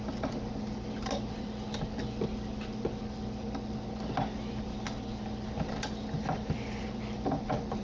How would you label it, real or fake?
real